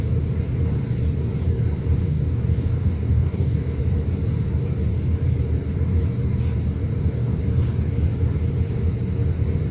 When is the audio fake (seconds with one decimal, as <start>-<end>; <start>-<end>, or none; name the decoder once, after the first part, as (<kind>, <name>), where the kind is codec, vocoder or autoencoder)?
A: 2.0-3.8 (codec, DAC); 6.9-7.4